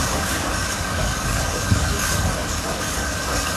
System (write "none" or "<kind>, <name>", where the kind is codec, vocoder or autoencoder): codec, DAC